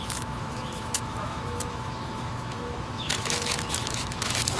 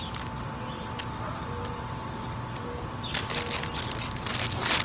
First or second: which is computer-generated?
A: first